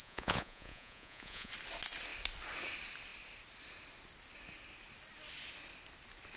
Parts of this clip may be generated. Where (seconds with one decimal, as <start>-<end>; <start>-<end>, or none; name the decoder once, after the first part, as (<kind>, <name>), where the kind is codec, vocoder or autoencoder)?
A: 0.0-1.5 (vocoder, Vocos)